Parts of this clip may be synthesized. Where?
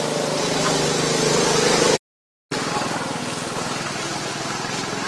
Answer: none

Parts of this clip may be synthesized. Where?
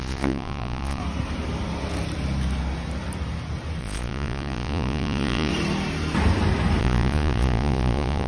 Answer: 0.0-1.0 (vocoder, Vocos); 3.8-5.5; 6.8-8.3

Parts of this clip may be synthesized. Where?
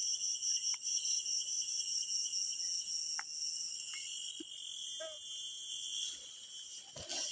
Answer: 5.7-6.3 (vocoder, Vocos)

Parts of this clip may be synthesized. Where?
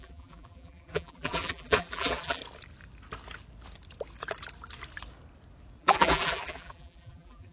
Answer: 0.0-2.4 (vocoder, BigVGAN v2); 5.8-7.5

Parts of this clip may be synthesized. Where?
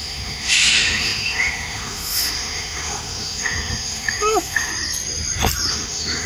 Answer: 0.0-4.7 (autoencoder, DAC-VAE); 5.7-6.3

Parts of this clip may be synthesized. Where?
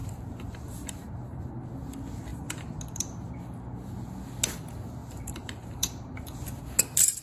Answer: 0.0-1.4 (vocoder, BigVGAN v2); 2.3-2.8; 5.0-6.6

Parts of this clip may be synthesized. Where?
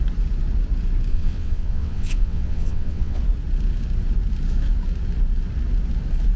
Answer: 1.1-3.2 (vocoder, WaveNeXt)